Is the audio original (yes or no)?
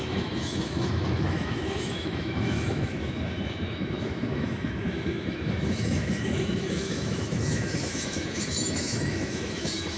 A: no